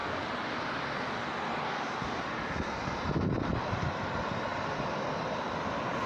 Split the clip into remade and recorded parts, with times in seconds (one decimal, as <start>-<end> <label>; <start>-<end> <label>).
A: 0.0-6.1 recorded